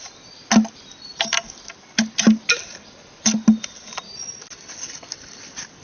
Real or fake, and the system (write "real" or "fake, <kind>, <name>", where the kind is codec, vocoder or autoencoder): real